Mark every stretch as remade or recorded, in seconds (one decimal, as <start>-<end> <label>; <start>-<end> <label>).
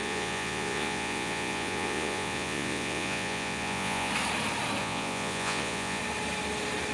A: 0.0-4.1 remade; 4.1-4.8 recorded; 4.8-6.0 remade; 6.0-6.9 recorded